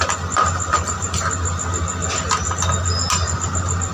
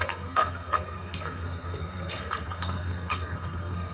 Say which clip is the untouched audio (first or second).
first